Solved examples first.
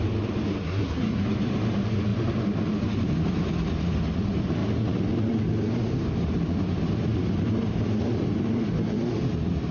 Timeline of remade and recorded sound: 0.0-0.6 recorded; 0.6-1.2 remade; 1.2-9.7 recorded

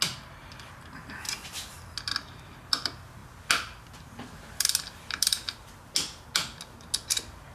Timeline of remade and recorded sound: 0.0-7.5 recorded

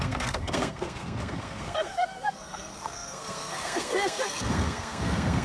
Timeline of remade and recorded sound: 0.0-5.4 remade